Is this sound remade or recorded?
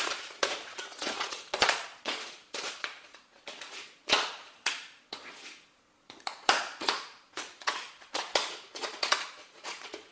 remade